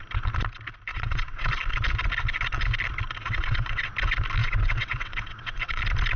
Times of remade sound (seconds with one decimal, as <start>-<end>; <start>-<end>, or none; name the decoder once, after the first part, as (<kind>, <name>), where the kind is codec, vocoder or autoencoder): 0.9-1.5 (vocoder, WaveNeXt); 3.2-3.9; 4.4-5.8